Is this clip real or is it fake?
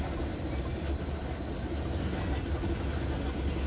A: real